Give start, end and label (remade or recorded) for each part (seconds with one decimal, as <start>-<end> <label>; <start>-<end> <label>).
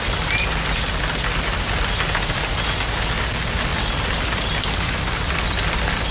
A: 0.0-3.7 recorded; 3.7-6.1 remade